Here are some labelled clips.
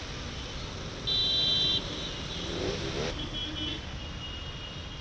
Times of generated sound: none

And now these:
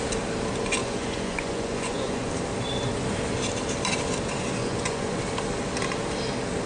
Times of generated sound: 0.8-2.3; 4.6-5.2

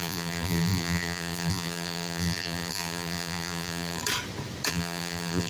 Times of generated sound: 0.0-4.0; 4.7-5.5

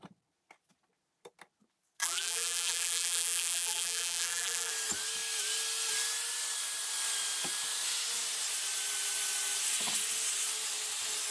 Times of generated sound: 2.0-4.7